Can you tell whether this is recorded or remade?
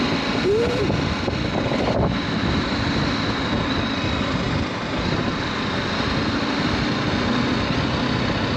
recorded